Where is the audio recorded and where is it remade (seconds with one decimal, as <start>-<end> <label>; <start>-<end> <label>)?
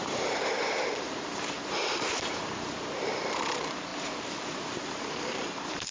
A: 0.0-3.9 remade; 3.9-4.5 recorded; 4.5-5.9 remade